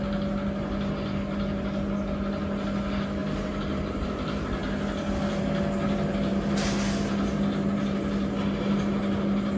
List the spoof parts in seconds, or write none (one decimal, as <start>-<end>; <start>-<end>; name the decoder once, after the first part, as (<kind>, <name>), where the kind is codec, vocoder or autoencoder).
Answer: none